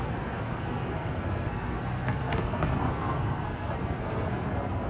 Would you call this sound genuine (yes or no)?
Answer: no